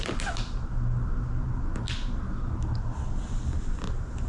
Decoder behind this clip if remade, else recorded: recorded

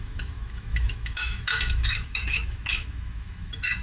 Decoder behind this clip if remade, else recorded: remade, autoencoder, DAC-VAE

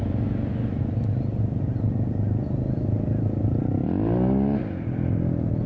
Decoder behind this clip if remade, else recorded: recorded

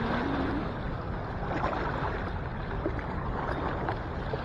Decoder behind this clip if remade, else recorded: recorded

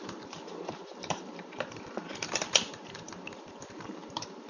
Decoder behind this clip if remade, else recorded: remade, vocoder, BigVGAN v2